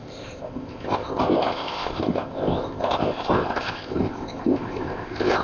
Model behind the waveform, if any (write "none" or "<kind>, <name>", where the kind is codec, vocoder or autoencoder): codec, ZipCodec